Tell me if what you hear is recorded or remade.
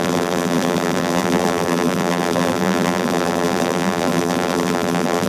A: remade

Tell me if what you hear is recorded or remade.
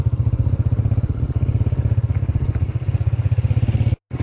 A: recorded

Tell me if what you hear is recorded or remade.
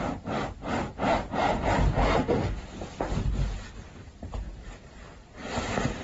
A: recorded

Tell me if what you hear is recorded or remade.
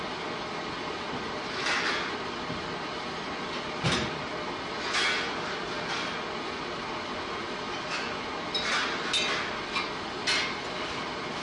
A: recorded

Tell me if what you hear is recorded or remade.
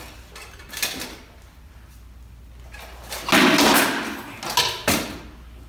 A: recorded